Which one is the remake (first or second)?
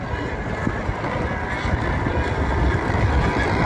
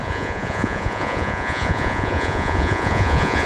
second